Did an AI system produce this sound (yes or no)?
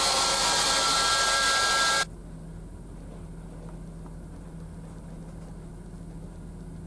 no